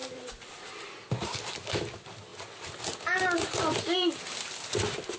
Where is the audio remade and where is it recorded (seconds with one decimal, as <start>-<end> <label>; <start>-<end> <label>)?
0.0-5.2 recorded